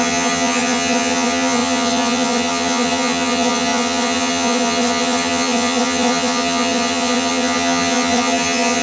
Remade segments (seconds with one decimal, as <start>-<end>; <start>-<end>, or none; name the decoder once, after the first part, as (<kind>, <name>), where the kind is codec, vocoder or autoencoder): 0.0-8.8 (vocoder, HiFi-GAN)